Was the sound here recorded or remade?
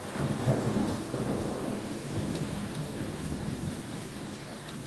remade